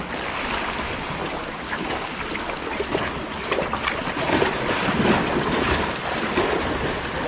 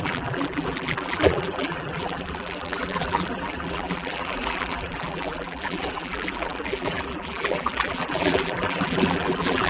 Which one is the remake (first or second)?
second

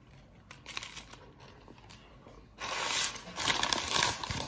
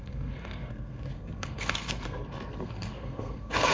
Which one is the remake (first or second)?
second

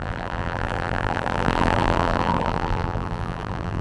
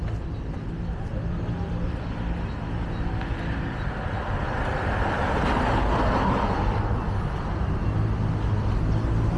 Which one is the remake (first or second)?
first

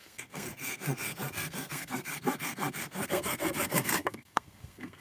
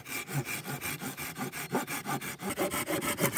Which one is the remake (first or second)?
first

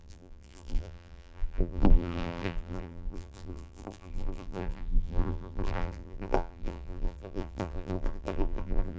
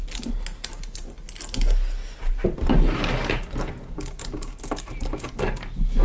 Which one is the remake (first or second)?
first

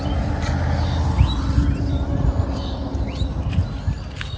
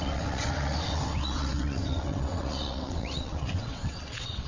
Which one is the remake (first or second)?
second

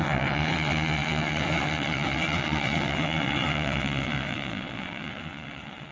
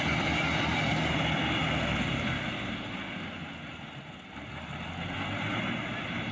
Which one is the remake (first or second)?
first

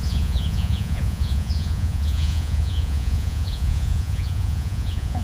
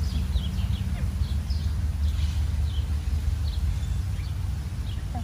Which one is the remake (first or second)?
first